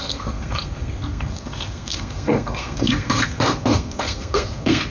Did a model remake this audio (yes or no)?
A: yes